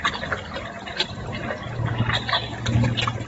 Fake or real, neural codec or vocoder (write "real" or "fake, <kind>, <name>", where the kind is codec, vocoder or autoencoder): real